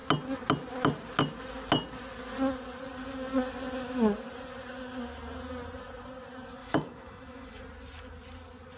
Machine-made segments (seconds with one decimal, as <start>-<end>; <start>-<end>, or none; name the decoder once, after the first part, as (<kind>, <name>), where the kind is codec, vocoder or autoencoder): 6.6-7.6 (autoencoder, DAC-VAE)